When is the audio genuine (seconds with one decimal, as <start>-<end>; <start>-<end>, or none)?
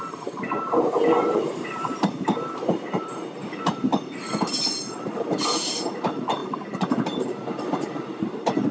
3.9-4.9